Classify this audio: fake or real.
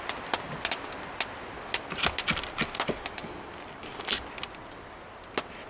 real